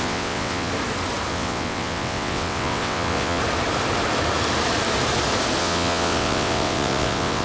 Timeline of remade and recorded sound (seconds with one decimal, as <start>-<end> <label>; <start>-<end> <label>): 0.0-0.7 remade; 0.7-1.3 recorded; 1.3-3.4 remade; 3.4-5.6 recorded; 5.6-7.4 remade